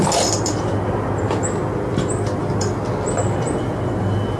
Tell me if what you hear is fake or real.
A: real